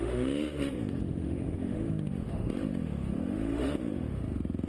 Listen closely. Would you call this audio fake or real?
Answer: fake